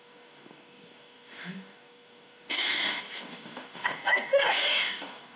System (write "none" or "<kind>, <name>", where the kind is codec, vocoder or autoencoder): codec, DAC